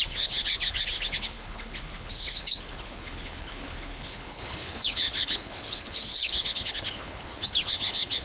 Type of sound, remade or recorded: remade